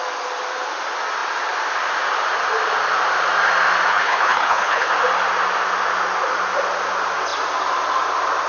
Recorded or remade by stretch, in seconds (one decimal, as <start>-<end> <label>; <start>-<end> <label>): 0.0-3.9 recorded; 3.9-4.9 remade; 4.9-8.5 recorded